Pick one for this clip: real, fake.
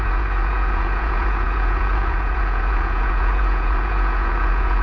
fake